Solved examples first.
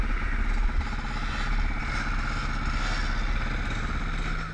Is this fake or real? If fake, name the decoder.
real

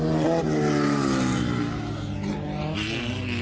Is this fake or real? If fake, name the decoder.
real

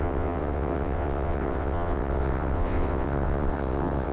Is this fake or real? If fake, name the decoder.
fake, vocoder, WaveNeXt